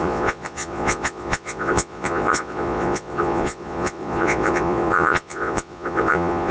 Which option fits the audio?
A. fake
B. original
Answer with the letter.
A